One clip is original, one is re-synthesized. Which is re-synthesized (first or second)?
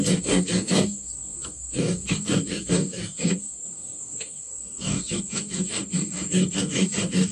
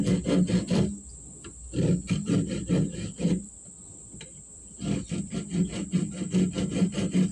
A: first